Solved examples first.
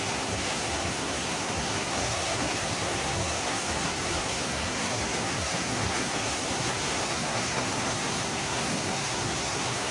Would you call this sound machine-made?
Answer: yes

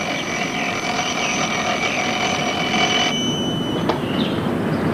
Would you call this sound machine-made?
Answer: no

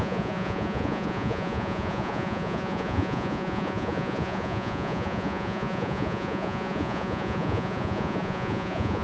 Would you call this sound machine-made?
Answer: yes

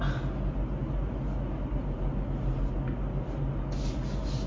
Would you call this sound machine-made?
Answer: no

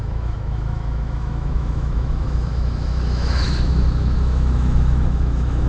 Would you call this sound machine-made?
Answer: yes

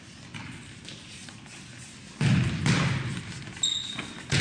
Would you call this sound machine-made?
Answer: no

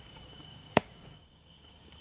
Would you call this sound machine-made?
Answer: yes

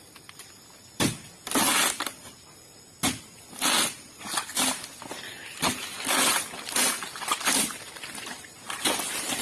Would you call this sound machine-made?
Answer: no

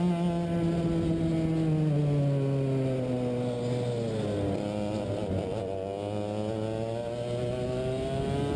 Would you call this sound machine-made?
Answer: no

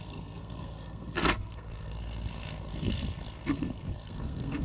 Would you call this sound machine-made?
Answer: yes